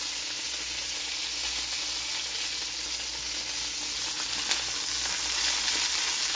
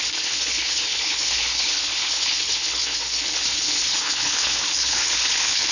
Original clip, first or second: first